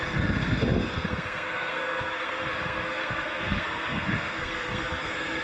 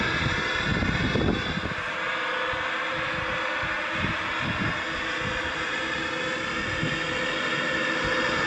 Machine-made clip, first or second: first